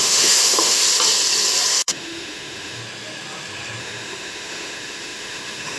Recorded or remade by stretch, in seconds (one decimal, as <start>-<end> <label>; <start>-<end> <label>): 0.0-0.8 remade; 0.8-1.7 recorded; 1.7-2.8 remade; 2.8-3.8 recorded; 3.8-5.8 remade